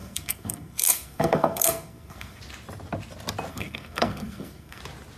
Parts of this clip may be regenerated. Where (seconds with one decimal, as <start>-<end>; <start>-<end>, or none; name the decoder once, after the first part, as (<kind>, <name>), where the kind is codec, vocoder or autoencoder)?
0.0-2.4 (codec, SNAC); 3.5-4.8